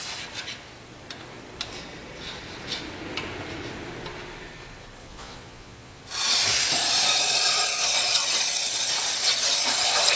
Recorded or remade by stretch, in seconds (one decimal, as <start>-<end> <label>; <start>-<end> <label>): 0.0-5.0 recorded; 5.0-6.0 remade; 6.0-10.2 recorded